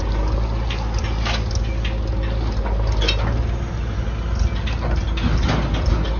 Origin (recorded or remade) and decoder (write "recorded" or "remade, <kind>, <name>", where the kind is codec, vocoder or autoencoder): recorded